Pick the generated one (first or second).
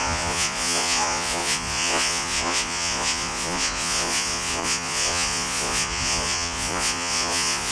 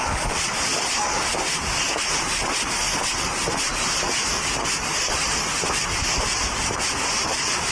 first